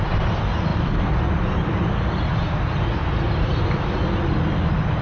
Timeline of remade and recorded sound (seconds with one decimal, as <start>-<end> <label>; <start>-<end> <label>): 0.0-5.0 recorded

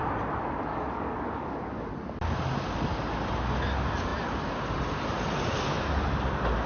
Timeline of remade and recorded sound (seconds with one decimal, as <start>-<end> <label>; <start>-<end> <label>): 0.0-0.7 recorded; 0.7-1.9 remade; 1.9-6.7 recorded

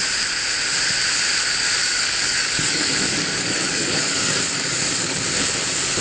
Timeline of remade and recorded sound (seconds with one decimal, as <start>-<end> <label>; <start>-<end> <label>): 0.0-1.8 recorded; 1.8-5.2 remade; 5.2-6.0 recorded

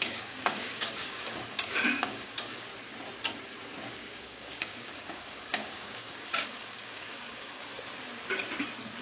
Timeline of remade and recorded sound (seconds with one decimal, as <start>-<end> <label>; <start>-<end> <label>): 0.0-2.7 remade; 2.7-3.9 recorded; 3.9-7.7 remade; 7.7-9.0 recorded

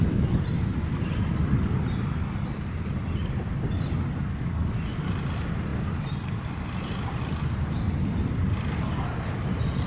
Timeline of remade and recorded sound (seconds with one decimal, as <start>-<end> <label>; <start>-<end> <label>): 0.0-9.9 recorded

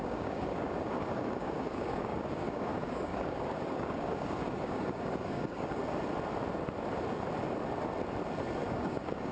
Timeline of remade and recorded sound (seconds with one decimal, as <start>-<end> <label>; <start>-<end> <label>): 0.0-5.8 remade; 5.8-8.6 recorded; 8.6-9.3 remade

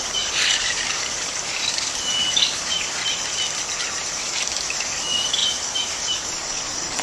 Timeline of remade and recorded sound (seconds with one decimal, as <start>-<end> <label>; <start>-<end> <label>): 0.0-3.0 remade; 3.0-4.1 recorded; 4.1-7.0 remade